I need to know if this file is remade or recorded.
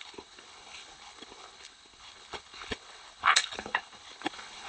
remade